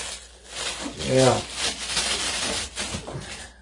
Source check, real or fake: real